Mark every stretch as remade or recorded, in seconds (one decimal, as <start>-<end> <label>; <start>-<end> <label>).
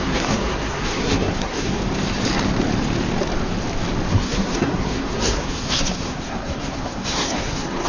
0.0-1.8 remade; 1.8-4.1 recorded; 4.1-7.9 remade